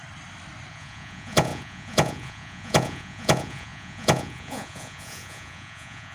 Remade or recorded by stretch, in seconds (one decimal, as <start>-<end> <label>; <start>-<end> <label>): 0.0-0.7 recorded; 0.7-6.1 remade